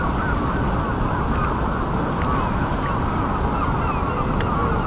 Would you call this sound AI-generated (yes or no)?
no